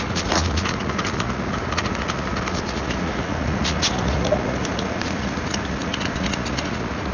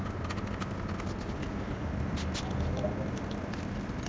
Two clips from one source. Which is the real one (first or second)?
second